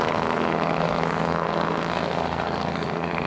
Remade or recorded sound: remade